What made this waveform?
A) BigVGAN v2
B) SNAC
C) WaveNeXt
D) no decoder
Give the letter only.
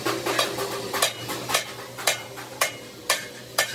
D